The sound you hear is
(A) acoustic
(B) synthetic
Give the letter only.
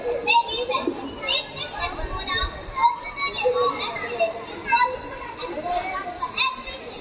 A